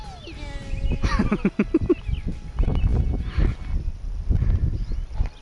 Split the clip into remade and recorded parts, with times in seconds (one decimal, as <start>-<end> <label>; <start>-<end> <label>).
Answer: 0.0-5.4 recorded